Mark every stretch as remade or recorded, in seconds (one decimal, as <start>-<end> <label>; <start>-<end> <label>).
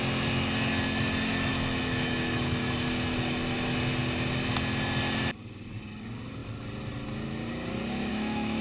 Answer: 0.0-1.5 recorded; 1.5-2.6 remade; 2.6-8.1 recorded; 8.1-8.6 remade